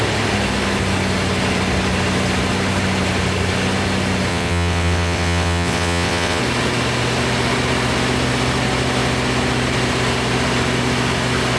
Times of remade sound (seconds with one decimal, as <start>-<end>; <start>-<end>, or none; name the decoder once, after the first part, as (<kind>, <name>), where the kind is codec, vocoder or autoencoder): 4.3-6.4 (vocoder, WaveNeXt)